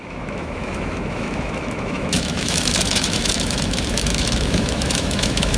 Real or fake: fake